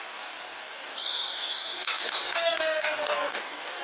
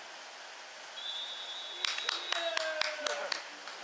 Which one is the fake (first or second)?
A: first